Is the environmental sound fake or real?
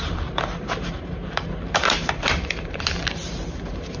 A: fake